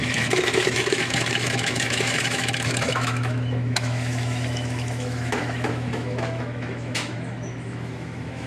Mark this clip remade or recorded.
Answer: remade